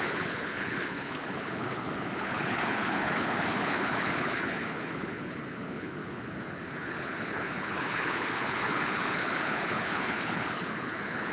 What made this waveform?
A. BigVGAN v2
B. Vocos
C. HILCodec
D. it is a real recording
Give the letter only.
C